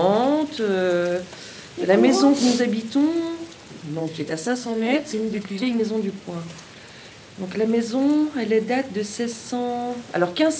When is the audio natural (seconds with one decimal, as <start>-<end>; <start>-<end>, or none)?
0.0-4.0; 5.8-10.6